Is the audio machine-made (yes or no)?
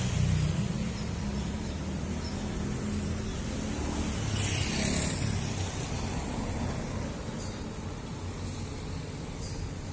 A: no